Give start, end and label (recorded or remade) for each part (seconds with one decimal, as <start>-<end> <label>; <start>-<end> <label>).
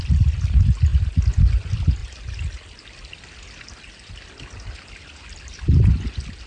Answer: 0.0-6.5 recorded